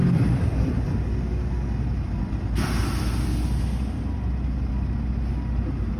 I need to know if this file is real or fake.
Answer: real